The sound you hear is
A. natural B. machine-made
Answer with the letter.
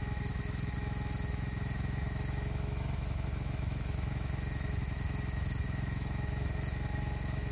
B